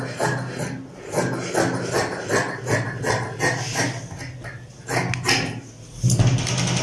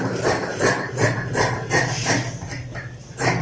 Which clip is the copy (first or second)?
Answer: second